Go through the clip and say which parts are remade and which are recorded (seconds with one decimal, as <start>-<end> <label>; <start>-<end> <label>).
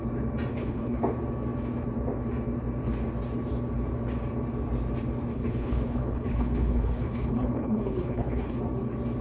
0.0-0.5 recorded; 0.5-1.0 remade; 1.0-5.3 recorded; 5.3-8.6 remade; 8.6-9.2 recorded